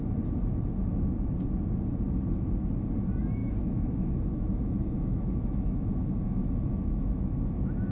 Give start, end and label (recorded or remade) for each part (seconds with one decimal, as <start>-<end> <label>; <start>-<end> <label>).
0.0-3.4 recorded; 3.4-7.9 remade